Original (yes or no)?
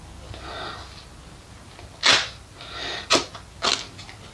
yes